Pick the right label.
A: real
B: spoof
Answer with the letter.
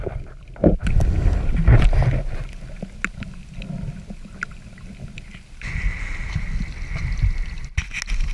A